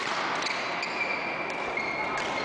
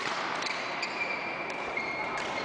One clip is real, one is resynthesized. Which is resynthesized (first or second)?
second